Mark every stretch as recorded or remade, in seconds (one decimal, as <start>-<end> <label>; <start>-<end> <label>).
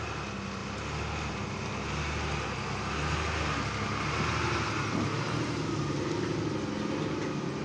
0.0-7.6 recorded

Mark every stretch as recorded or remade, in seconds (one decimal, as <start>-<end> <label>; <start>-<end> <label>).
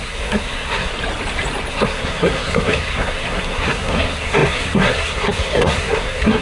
0.0-0.9 remade; 0.9-1.7 recorded; 1.7-6.4 remade